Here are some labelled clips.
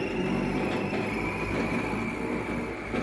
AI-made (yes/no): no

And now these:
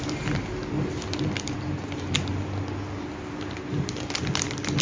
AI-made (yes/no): no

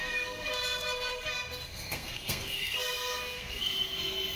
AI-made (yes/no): yes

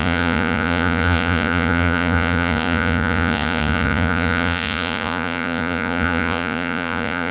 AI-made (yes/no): yes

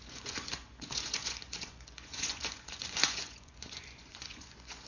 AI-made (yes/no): yes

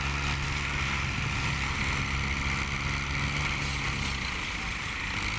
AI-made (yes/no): no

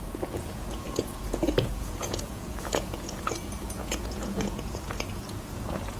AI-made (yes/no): yes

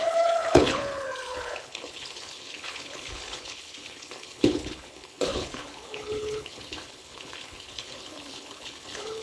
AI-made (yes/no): yes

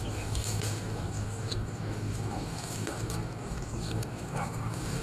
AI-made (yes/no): yes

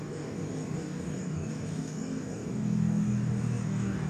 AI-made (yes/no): yes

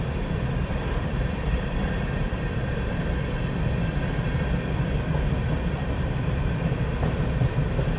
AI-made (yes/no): yes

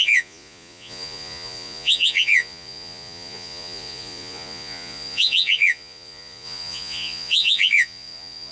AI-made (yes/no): yes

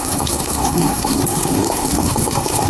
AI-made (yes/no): yes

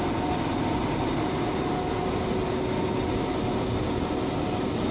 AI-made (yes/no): no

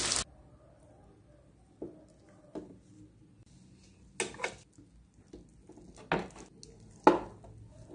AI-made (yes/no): no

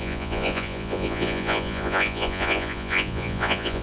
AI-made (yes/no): yes